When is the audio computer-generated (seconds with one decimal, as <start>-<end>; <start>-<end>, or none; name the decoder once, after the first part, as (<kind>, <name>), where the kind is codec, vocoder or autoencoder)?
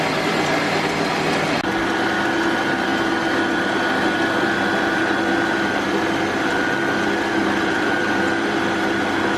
0.0-2.9 (vocoder, BigVGAN v2); 5.9-9.4